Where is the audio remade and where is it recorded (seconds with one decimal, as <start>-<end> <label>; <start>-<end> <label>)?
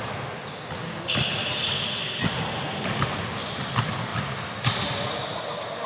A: 0.0-5.9 recorded